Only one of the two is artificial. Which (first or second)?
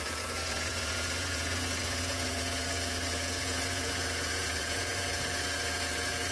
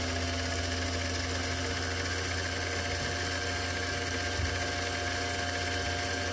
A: first